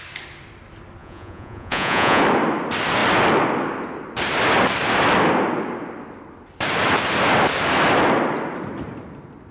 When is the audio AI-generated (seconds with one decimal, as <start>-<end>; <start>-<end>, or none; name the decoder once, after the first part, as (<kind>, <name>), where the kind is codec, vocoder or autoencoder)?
1.0-2.2 (vocoder, Vocos)

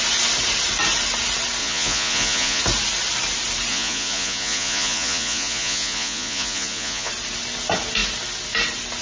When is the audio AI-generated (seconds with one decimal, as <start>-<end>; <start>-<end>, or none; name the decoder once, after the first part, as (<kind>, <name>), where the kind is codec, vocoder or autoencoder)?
1.6-2.6 (vocoder, Vocos); 3.7-7.1

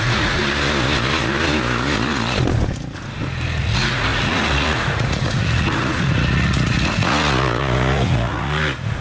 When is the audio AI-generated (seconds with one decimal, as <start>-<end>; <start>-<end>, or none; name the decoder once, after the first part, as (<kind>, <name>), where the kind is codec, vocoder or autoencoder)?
0.0-0.4 (vocoder, Vocos); 3.6-9.0

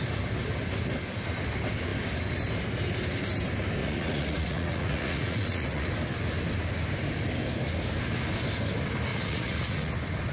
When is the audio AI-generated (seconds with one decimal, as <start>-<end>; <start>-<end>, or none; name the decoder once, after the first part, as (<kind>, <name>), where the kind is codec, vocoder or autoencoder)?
3.8-5.9 (vocoder, Vocos); 9.1-9.9

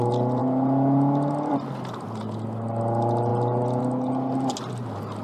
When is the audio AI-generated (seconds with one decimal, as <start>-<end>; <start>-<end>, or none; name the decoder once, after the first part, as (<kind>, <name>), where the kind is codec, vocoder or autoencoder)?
none

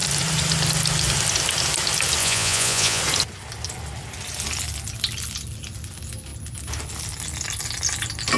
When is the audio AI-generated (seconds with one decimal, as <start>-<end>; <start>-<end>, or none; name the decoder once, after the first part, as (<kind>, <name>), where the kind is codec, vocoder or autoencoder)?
2.2-3.0 (vocoder, Vocos)

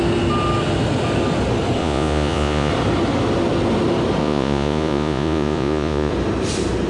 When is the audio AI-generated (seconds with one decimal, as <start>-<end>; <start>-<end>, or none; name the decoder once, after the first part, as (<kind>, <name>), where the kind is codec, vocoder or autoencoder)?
1.8-2.7 (vocoder, Vocos); 4.2-6.1